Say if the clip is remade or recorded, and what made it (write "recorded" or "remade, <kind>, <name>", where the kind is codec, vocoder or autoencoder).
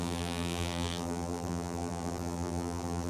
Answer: remade, vocoder, BigVGAN v2